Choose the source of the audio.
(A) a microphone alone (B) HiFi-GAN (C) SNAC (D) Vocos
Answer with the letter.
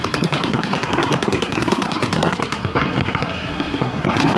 C